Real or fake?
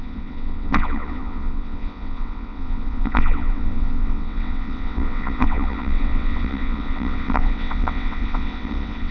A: fake